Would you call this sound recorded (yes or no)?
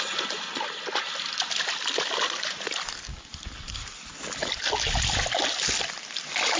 yes